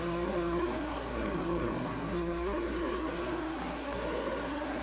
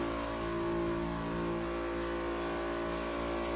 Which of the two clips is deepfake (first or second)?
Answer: first